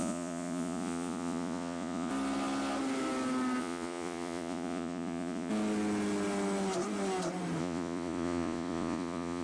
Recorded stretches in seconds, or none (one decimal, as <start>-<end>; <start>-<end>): 2.1-3.6; 5.5-7.6